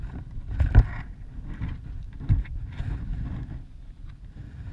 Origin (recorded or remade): recorded